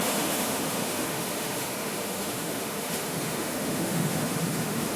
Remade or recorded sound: remade